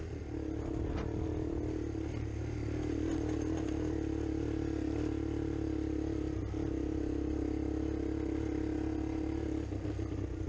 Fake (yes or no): no